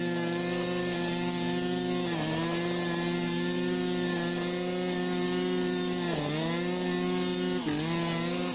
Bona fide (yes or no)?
yes